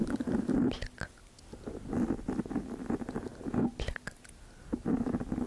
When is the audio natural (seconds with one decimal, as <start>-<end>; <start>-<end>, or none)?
0.0-5.5